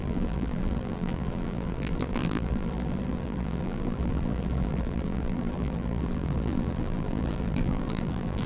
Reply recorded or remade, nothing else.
remade